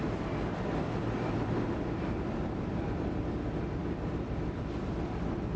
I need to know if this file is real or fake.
fake